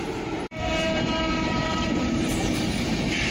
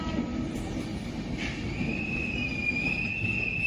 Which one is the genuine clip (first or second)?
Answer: second